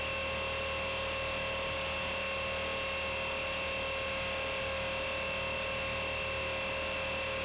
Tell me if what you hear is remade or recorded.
recorded